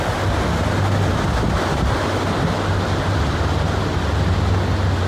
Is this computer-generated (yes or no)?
no